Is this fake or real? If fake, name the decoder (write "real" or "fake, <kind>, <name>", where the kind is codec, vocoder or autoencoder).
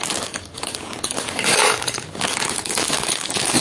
fake, codec, DAC